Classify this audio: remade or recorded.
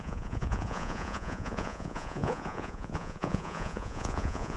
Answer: remade